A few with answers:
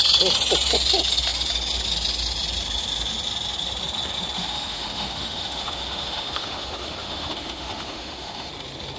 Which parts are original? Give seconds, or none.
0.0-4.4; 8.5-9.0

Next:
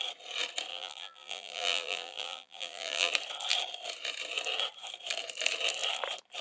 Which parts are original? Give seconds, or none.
0.0-0.7; 3.1-6.4

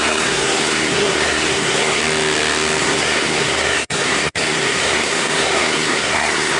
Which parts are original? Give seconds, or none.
2.0-2.8

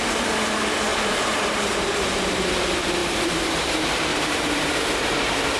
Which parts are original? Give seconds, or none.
0.0-0.9; 2.2-4.1

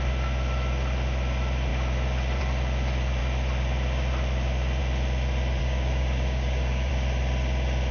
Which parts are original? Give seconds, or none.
0.0-5.6; 6.9-7.9

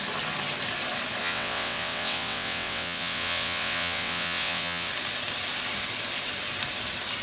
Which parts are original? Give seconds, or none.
0.0-1.2; 4.9-7.2